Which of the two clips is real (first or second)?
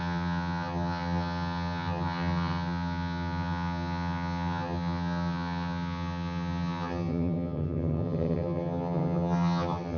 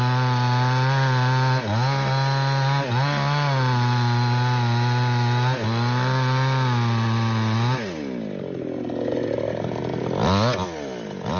second